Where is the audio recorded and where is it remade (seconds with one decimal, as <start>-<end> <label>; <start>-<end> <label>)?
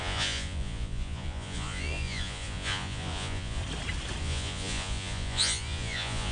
0.0-3.6 remade; 3.6-4.2 recorded; 4.2-6.3 remade